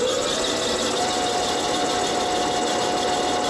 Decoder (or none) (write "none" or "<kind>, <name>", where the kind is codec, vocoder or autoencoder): none